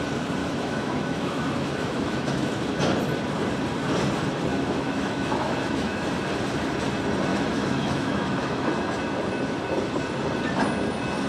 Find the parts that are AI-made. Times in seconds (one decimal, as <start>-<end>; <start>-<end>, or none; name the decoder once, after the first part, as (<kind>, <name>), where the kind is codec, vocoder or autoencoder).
0.4-2.5 (autoencoder, DAC-VAE); 4.5-6.1; 7.3-8.7